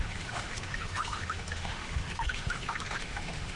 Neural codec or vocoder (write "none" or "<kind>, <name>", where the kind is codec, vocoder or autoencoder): autoencoder, DAC-VAE